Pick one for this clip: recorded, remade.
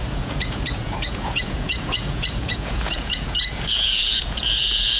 remade